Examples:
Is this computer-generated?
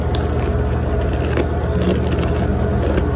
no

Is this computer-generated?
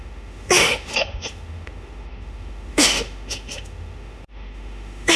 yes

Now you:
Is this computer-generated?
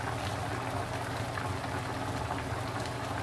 no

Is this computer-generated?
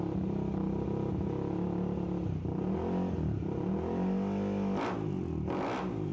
no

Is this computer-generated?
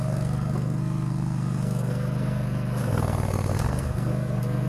yes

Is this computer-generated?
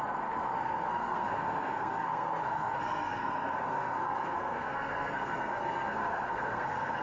yes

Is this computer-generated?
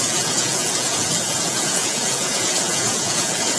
yes